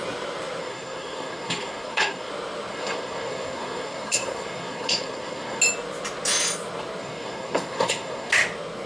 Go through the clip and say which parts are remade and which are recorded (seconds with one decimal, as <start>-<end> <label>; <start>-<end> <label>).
0.0-0.6 recorded; 0.6-2.3 remade; 2.3-2.7 recorded; 2.7-5.6 remade; 5.6-7.0 recorded; 7.0-8.3 remade; 8.3-8.9 recorded